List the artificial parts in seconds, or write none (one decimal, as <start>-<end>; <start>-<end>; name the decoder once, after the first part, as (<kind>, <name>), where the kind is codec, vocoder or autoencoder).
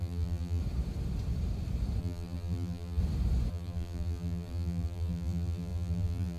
0.0-0.6 (vocoder, BigVGAN v2); 2.0-3.0; 3.5-6.4